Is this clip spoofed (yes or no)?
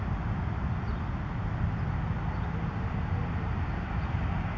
no